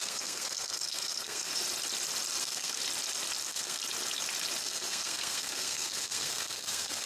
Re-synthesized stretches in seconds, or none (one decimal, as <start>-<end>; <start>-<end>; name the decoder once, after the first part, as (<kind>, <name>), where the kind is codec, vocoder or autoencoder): 0.0-1.5 (codec, SNAC); 2.4-2.8; 3.4-3.8; 4.6-7.1

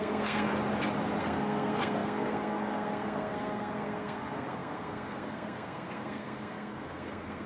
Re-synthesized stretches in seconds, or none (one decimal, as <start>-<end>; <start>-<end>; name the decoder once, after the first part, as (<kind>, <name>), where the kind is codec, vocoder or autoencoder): 0.0-0.5 (codec, SNAC); 1.2-7.5

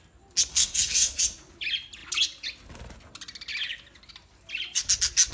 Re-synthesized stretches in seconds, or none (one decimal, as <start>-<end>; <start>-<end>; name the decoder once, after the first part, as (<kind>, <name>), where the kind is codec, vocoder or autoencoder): 0.5-1.2 (codec, SNAC)

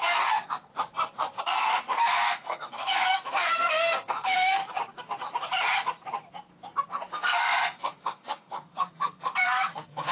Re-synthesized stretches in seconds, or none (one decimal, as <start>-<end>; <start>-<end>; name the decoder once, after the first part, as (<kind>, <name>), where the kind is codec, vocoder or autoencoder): 0.0-0.7 (codec, SNAC); 1.4-4.6; 6.9-10.1

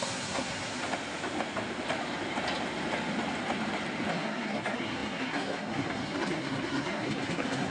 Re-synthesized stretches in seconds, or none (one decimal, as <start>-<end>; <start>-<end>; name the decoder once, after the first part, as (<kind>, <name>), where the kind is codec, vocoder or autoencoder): 0.0-0.8 (codec, SNAC); 4.1-7.7

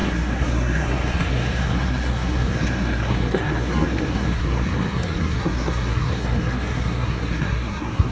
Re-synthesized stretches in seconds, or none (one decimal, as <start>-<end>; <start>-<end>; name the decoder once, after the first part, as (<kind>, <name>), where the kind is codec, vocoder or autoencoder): 0.0-8.1 (codec, SNAC)